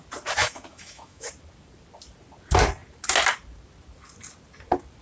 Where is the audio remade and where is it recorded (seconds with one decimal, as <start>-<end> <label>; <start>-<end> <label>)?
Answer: 0.0-0.4 recorded; 0.4-1.3 remade; 1.3-5.0 recorded